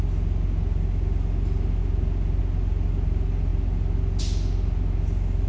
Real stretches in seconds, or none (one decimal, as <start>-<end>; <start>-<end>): 0.0-5.5